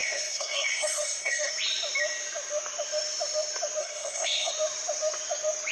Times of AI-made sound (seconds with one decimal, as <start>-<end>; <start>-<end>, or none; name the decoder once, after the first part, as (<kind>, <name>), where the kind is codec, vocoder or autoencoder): 0.0-1.5 (codec, SNAC); 3.8-4.5